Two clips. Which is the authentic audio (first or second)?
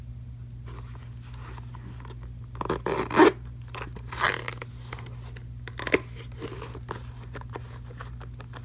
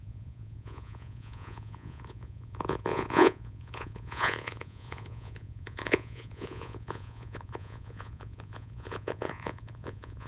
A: first